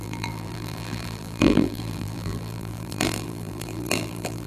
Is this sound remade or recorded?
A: remade